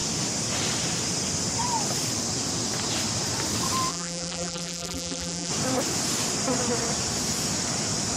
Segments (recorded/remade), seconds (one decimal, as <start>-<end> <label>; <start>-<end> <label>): 0.0-3.9 recorded; 3.9-5.5 remade; 5.5-8.2 recorded